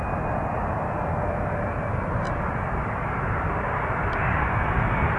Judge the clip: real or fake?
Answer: real